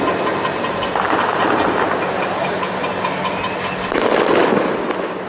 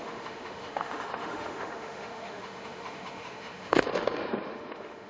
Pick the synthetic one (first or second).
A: second